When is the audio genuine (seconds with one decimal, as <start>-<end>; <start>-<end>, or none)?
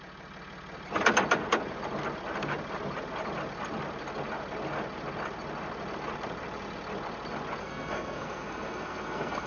0.0-7.6